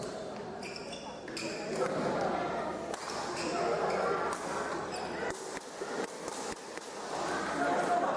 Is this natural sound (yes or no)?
yes